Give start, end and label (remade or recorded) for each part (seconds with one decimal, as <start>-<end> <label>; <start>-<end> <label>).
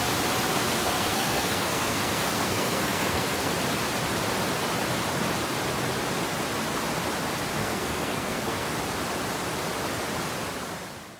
0.0-0.5 recorded; 0.5-3.5 remade; 3.5-7.6 recorded; 7.6-8.7 remade; 8.7-11.2 recorded